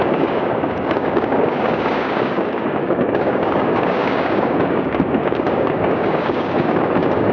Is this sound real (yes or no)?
no